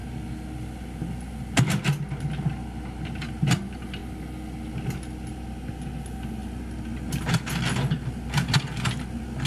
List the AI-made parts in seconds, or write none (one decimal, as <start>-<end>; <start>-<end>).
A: none